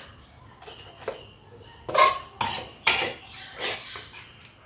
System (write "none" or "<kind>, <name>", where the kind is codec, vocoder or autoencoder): none